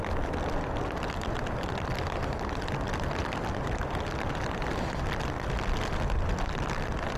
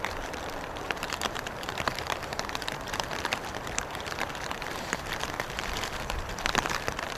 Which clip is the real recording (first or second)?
first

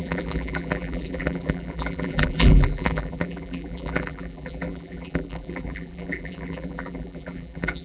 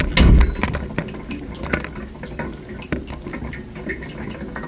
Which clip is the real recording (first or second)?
second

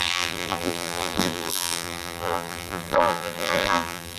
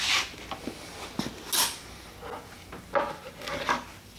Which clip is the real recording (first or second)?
second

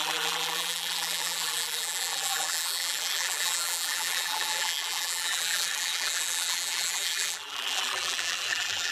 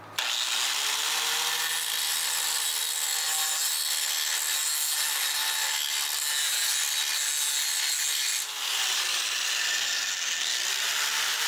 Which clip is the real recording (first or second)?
second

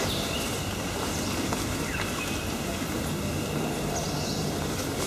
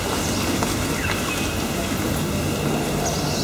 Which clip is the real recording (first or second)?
second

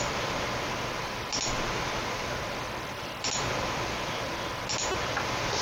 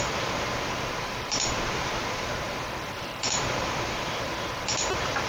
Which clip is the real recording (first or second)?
first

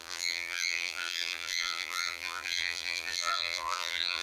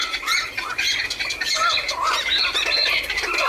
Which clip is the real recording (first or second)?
second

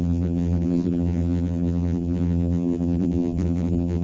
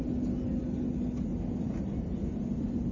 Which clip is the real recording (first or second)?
second